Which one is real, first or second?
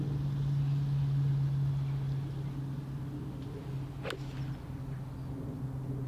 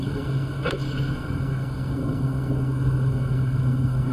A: first